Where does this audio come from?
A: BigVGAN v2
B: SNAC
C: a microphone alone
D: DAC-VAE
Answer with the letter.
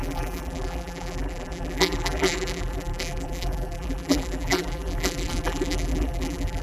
A